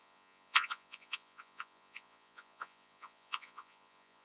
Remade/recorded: remade